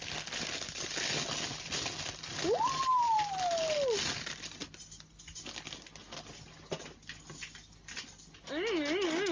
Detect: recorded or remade recorded